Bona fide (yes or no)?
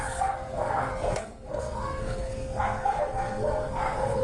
no